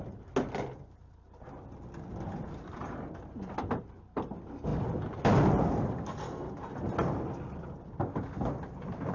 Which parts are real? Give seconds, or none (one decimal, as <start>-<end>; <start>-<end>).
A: 0.0-9.1